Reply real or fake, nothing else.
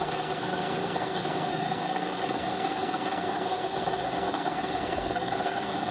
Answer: fake